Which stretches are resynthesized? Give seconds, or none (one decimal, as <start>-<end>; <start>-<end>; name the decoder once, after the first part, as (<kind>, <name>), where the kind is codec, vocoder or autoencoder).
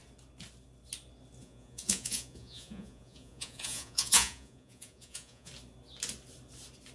1.4-5.5 (vocoder, Vocos)